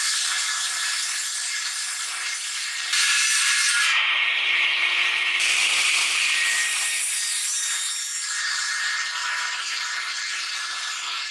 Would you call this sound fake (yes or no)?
yes